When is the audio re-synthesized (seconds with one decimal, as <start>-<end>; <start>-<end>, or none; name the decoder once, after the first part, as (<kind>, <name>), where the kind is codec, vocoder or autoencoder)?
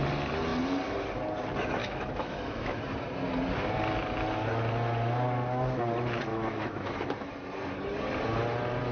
1.8-2.8 (autoencoder, DAC-VAE); 6.3-7.3